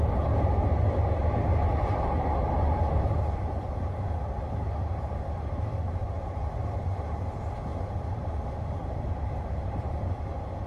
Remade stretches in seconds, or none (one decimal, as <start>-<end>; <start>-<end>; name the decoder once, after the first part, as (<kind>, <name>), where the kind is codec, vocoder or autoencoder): 4.8-7.0 (vocoder, BigVGAN v2); 7.7-10.1